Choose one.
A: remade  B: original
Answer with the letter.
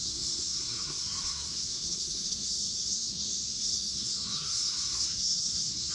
A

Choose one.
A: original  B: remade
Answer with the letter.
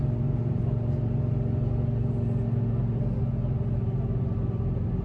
A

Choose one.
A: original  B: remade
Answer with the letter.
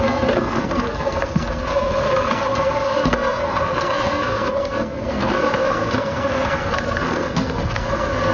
B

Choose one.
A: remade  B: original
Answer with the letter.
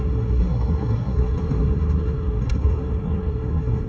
A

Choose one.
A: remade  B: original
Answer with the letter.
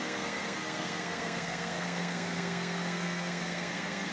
A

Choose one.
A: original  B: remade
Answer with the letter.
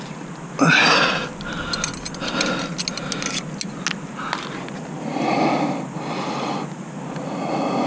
A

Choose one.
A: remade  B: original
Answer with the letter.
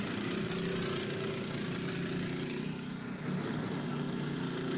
B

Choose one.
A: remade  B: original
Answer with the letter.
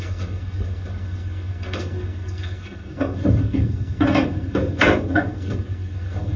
A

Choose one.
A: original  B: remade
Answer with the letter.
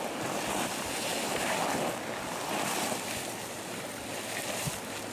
A